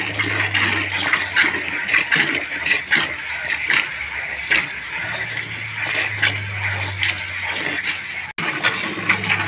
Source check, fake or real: real